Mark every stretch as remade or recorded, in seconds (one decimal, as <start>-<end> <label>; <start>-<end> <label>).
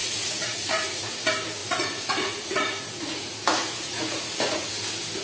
0.0-1.1 remade; 1.1-1.6 recorded; 1.6-4.7 remade; 4.7-5.2 recorded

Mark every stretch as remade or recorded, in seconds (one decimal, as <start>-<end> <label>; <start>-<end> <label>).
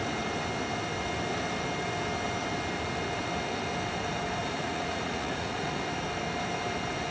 0.0-4.4 recorded; 4.4-5.8 remade; 5.8-7.1 recorded